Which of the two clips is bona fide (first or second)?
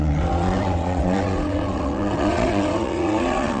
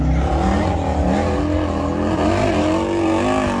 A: second